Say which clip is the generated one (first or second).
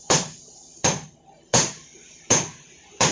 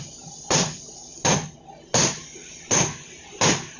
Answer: first